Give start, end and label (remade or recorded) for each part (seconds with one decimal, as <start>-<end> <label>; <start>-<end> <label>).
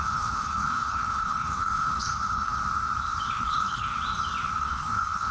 0.0-2.6 remade; 2.6-3.3 recorded; 3.3-3.9 remade; 3.9-4.6 recorded; 4.6-5.3 remade